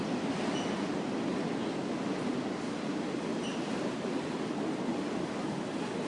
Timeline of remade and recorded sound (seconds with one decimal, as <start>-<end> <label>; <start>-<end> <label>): 0.0-3.3 recorded; 3.3-5.3 remade; 5.3-6.1 recorded